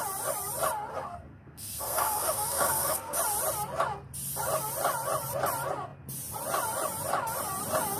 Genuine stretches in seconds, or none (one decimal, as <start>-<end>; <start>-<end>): 0.0-0.9; 3.2-8.0